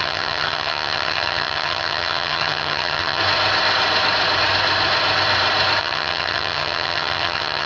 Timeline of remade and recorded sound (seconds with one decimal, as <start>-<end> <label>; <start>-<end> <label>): 0.0-3.2 remade; 3.2-5.8 recorded; 5.8-7.7 remade